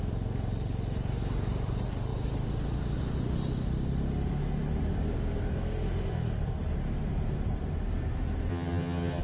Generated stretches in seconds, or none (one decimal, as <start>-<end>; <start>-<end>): 8.5-9.2